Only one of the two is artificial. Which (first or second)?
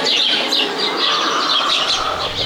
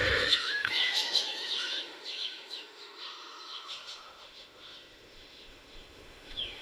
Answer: second